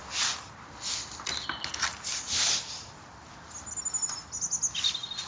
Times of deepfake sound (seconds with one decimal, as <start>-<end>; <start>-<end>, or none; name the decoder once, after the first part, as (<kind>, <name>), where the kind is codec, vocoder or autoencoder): none